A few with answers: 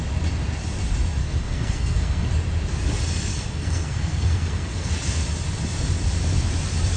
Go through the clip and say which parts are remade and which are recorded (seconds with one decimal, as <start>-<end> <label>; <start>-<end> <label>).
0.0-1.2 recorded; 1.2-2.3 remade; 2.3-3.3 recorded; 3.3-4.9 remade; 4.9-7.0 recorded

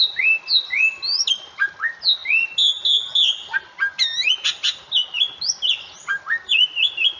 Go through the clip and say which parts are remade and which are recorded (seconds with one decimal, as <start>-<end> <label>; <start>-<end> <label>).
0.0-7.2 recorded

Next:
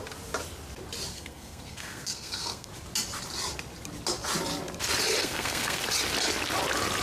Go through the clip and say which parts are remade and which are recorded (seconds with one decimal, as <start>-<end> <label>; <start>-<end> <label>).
0.0-1.1 recorded; 1.1-2.7 remade; 2.7-5.2 recorded; 5.2-5.8 remade; 5.8-7.0 recorded